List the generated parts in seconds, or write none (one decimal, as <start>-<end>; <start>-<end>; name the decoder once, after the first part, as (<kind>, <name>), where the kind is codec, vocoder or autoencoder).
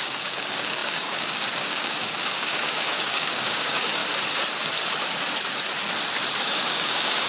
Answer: 0.0-4.0 (codec, DAC); 6.4-7.3